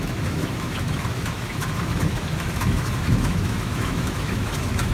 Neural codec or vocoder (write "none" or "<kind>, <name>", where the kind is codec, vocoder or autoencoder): autoencoder, DAC-VAE